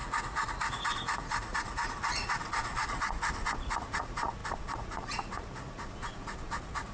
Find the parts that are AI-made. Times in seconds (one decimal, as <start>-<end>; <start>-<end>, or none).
0.0-6.9